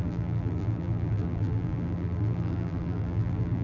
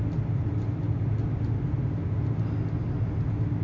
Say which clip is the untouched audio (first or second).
second